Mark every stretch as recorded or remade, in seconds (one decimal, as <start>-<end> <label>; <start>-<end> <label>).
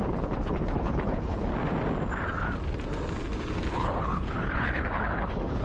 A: 0.0-1.5 remade; 1.5-3.7 recorded; 3.7-5.6 remade